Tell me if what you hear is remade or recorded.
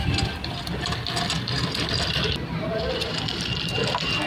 recorded